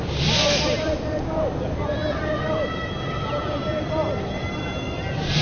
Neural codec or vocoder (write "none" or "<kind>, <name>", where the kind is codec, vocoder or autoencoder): none